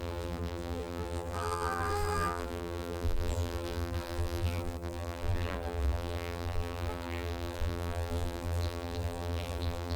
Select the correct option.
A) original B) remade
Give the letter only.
B